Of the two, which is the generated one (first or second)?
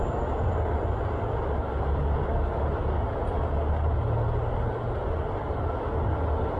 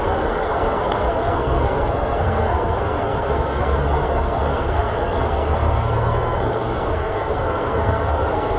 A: second